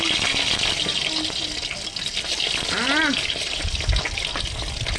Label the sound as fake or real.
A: real